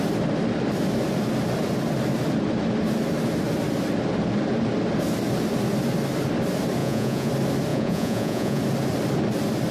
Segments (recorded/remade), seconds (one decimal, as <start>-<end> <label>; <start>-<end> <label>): 0.0-6.8 recorded; 6.8-7.3 remade; 7.3-7.7 recorded; 7.7-8.6 remade; 8.6-9.7 recorded